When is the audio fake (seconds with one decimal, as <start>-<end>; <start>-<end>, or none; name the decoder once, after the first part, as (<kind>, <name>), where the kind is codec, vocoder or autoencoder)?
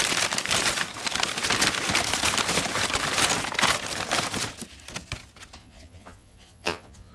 5.6-7.1 (vocoder, Vocos)